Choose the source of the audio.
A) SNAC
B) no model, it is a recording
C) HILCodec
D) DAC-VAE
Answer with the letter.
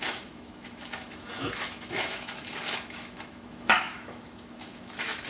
D